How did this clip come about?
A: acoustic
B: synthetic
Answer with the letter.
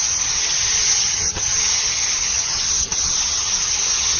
B